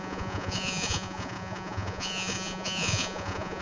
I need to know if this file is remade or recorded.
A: remade